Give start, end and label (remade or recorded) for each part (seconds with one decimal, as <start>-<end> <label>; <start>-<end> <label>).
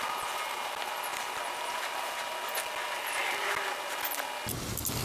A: 0.0-5.0 recorded